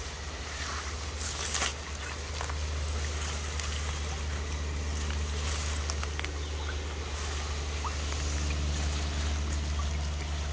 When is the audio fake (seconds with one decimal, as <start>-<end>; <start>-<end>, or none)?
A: none